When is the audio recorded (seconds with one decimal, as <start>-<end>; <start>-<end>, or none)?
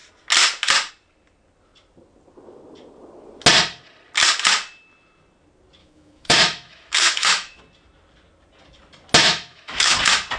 0.0-5.8; 7.6-9.2; 10.0-10.4